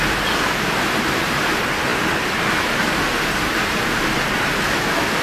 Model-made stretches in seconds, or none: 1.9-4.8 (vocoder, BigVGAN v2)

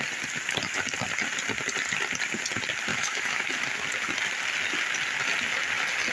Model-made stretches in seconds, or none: 2.9-3.5 (autoencoder, DAC-VAE)